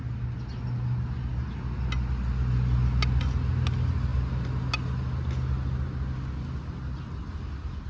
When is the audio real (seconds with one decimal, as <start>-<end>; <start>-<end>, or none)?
0.0-7.9